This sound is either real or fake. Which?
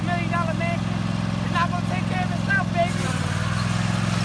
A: real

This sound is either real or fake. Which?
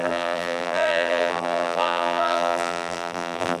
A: fake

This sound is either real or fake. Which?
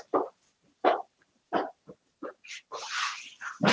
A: fake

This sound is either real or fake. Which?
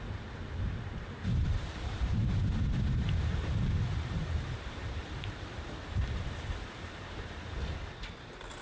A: fake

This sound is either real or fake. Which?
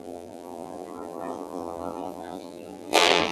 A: fake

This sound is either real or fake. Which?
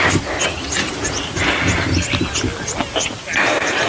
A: real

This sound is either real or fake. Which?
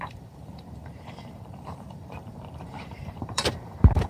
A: fake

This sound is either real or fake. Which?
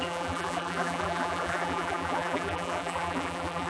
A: fake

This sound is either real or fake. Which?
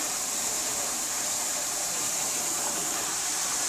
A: fake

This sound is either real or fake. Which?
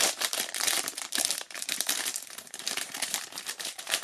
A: fake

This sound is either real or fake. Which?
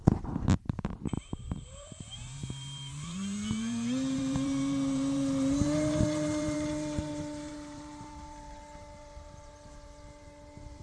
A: fake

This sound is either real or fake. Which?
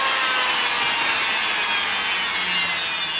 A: real